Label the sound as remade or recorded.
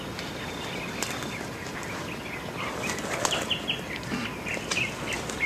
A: recorded